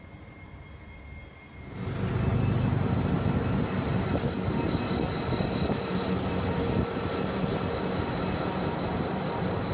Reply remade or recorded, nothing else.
recorded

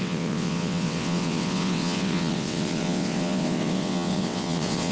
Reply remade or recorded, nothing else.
remade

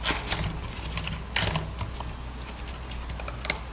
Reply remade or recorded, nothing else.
recorded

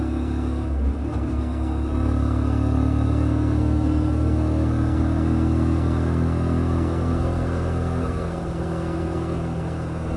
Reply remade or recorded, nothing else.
remade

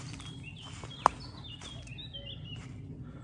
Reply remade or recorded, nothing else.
recorded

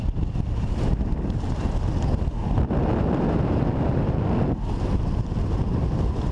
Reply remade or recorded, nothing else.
recorded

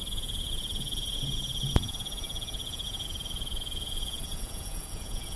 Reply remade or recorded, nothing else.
remade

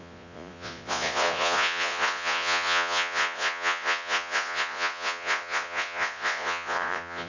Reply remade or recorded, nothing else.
remade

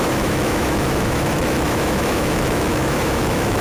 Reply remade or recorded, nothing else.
remade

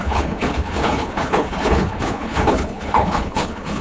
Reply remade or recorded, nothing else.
remade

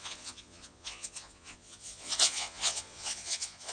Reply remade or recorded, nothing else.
remade